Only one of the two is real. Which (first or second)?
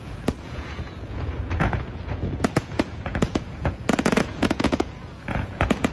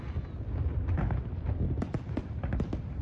second